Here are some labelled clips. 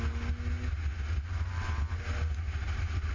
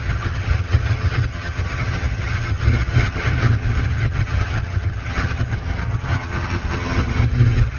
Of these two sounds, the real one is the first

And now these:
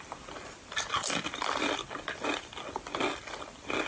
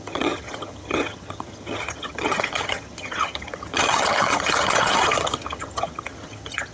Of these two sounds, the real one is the first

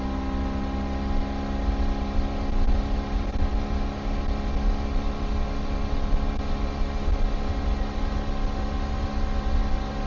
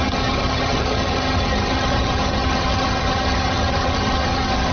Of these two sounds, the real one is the first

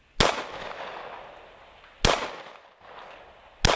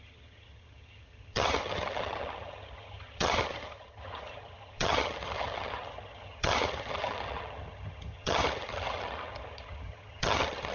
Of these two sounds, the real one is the first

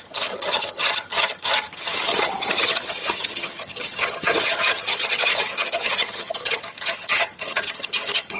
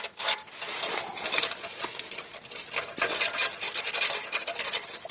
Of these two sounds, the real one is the second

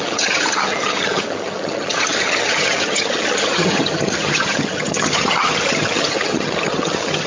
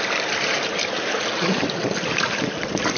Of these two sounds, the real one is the second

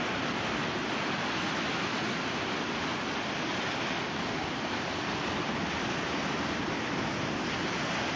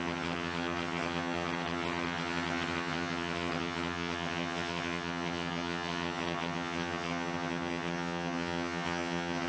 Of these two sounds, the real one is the first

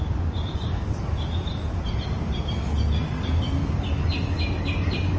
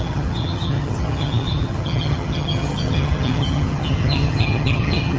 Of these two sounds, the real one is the first